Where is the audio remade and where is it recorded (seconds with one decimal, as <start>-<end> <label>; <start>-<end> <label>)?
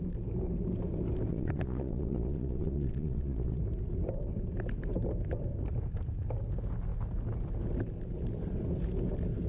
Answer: 0.0-1.3 recorded; 1.3-3.6 remade; 3.6-9.5 recorded